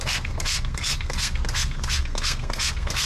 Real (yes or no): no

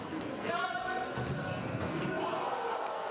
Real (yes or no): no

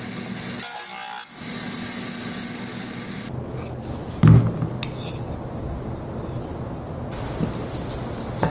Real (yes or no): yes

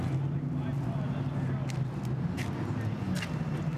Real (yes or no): yes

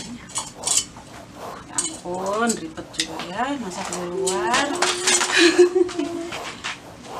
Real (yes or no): yes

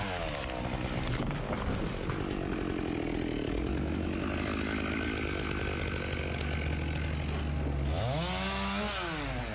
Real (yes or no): yes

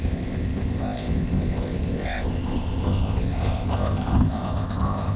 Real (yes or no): no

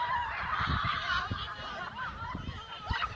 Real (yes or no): no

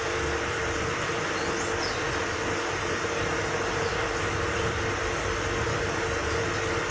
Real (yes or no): yes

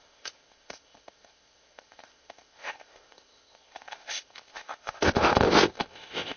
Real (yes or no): no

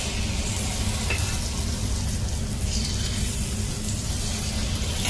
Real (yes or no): yes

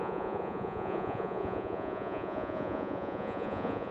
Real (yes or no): no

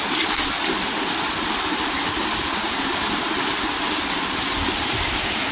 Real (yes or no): yes